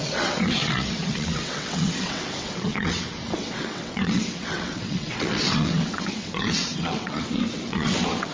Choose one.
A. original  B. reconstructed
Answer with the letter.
B